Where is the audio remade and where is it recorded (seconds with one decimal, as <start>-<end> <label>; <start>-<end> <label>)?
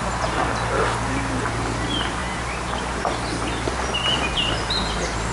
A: 0.0-0.4 remade; 0.4-1.5 recorded; 1.5-2.2 remade; 2.2-5.3 recorded